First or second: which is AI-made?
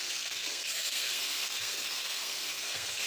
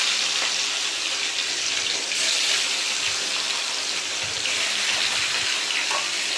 first